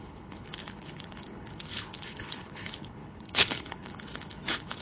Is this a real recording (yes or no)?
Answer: no